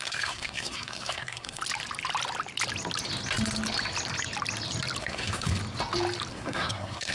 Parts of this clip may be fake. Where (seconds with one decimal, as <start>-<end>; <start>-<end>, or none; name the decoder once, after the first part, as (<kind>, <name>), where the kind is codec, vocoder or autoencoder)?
0.0-1.6 (codec, SNAC); 5.0-5.6; 6.3-7.1